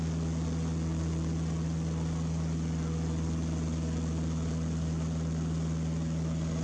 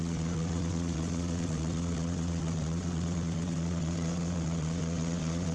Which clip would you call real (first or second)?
first